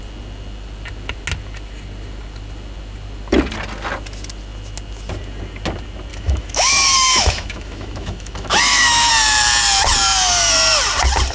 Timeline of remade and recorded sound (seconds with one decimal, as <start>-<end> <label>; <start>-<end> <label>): 0.0-6.1 recorded; 6.1-9.1 remade; 9.1-11.3 recorded